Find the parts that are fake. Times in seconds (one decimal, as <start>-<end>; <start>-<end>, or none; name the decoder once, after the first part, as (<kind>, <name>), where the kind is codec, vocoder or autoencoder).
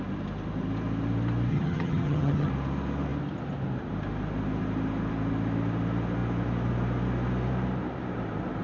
1.5-2.5 (vocoder, HiFi-GAN)